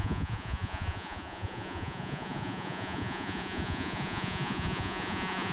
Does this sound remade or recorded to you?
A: remade